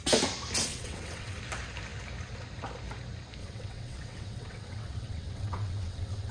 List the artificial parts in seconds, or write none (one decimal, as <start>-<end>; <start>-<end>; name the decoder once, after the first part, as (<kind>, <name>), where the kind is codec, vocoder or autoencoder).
0.7-1.4 (vocoder, WaveNeXt); 3.4-6.3